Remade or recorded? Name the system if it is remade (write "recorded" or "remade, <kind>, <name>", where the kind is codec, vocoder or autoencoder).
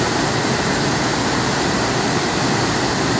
recorded